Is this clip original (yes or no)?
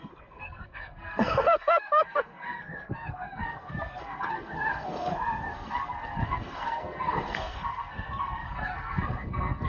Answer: no